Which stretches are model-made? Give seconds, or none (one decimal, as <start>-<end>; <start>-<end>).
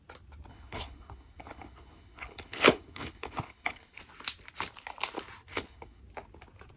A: 0.5-4.0; 5.5-6.0